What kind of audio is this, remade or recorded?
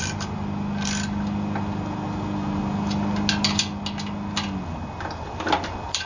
recorded